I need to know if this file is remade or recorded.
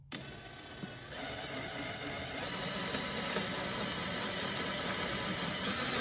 recorded